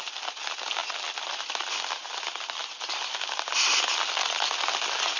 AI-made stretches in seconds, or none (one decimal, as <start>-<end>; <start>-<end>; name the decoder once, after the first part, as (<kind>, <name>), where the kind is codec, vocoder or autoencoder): none